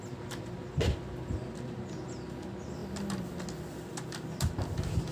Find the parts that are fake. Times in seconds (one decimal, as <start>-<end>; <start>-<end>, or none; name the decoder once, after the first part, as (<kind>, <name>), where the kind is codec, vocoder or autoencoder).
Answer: none